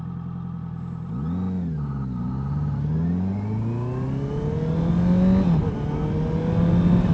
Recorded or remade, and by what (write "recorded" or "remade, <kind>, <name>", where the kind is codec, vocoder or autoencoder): recorded